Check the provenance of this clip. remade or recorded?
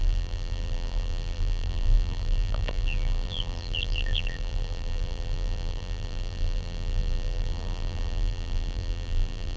remade